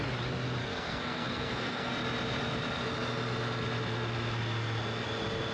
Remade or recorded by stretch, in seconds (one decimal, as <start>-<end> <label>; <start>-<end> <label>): 0.0-0.6 recorded; 0.6-1.9 remade; 1.9-5.5 recorded